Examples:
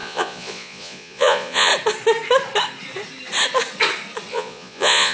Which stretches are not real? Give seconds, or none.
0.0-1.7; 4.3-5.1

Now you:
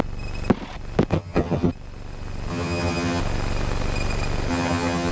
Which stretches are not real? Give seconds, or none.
1.1-1.7; 2.5-3.2; 4.5-5.1

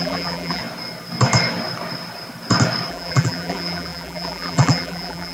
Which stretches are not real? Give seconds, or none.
0.0-0.6; 2.9-5.3

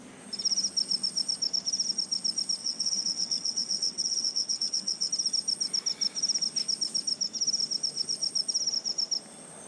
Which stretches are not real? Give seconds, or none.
2.6-5.1